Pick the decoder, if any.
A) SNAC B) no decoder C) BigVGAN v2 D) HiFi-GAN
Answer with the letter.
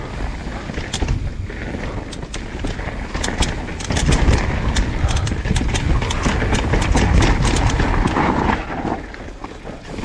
B